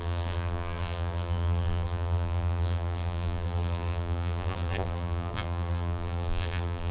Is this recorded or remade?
remade